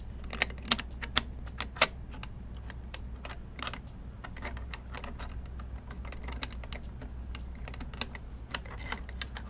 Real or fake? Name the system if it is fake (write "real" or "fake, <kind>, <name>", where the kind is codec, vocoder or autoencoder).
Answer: real